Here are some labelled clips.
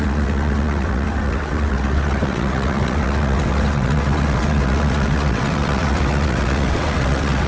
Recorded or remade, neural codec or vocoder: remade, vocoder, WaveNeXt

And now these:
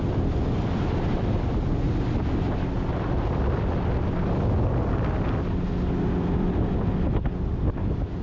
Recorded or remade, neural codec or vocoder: recorded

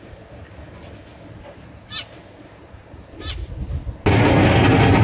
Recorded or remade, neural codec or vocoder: recorded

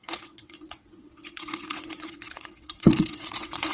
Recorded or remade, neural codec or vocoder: remade, vocoder, WaveNeXt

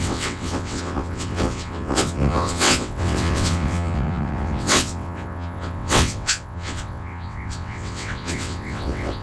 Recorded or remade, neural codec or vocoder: remade, vocoder, WaveNeXt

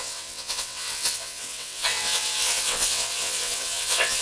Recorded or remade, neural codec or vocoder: remade, vocoder, WaveNeXt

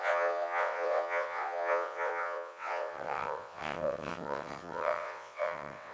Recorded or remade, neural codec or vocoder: remade, vocoder, WaveNeXt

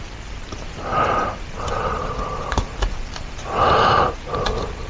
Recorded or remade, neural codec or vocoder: recorded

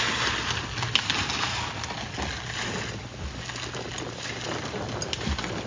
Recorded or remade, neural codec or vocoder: recorded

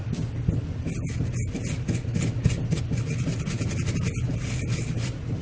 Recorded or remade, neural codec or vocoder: recorded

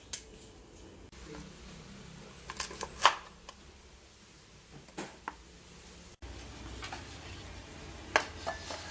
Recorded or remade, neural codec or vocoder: recorded